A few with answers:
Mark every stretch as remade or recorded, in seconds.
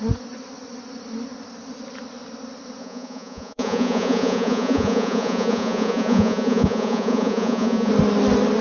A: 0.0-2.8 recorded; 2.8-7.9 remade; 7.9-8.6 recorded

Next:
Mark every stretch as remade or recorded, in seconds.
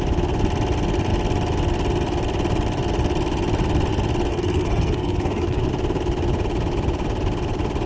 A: 0.0-4.3 recorded; 4.3-5.7 remade; 5.7-7.9 recorded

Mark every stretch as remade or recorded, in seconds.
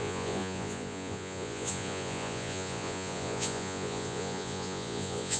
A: 0.0-5.4 remade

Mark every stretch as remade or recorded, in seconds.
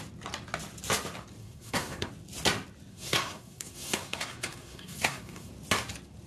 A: 0.0-1.4 recorded; 1.4-2.1 remade; 2.1-2.9 recorded; 2.9-5.5 remade; 5.5-6.3 recorded